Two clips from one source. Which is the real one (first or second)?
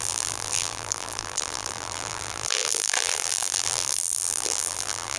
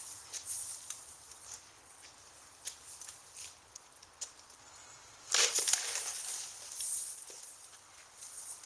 second